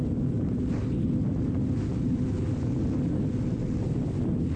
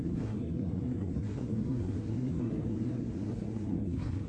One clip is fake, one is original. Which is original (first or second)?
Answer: first